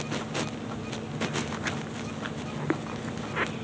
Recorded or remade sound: recorded